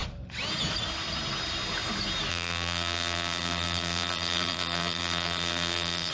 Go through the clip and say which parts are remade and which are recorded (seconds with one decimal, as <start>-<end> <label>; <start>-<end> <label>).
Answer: 0.0-2.3 recorded; 2.3-6.1 remade